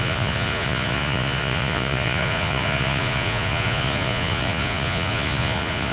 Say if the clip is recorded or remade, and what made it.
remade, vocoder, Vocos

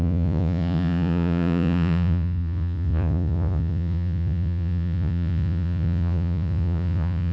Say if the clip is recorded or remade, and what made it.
remade, vocoder, Vocos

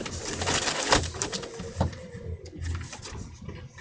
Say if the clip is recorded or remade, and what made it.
recorded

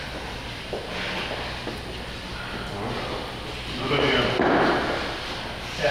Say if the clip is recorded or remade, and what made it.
recorded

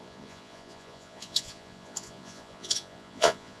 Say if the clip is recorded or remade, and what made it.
remade, vocoder, Vocos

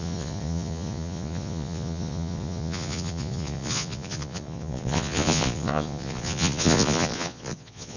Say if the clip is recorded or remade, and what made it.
remade, vocoder, Vocos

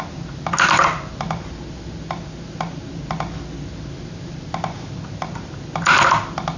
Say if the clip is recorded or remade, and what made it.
recorded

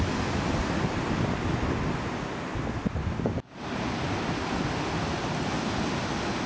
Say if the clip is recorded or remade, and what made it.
recorded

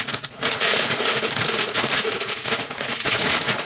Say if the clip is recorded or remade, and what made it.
remade, vocoder, Vocos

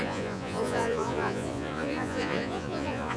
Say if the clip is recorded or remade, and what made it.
remade, vocoder, Vocos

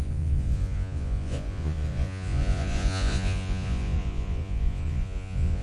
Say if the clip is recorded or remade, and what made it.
remade, vocoder, Vocos